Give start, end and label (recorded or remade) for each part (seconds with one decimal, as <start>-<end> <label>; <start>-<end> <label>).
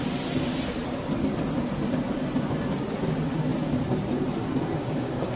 0.0-4.8 recorded; 4.8-5.4 remade